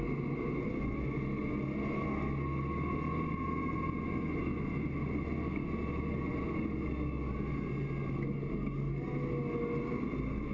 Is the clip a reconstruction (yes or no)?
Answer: no